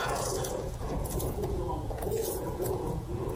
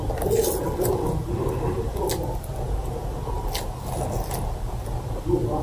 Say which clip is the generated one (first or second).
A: first